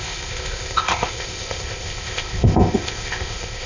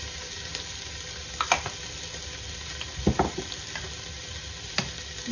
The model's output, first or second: first